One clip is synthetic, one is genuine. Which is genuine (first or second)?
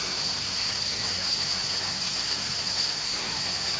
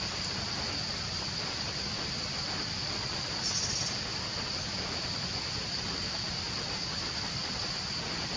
second